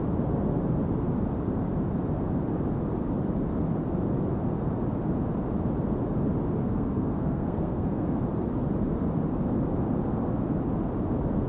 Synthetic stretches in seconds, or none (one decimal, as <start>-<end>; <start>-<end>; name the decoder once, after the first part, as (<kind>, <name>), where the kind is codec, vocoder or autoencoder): 6.6-8.2 (codec, SNAC)